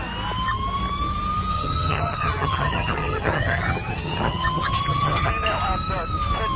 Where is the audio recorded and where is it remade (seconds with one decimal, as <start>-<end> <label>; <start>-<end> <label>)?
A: 0.0-1.5 recorded; 1.5-5.3 remade; 5.3-6.6 recorded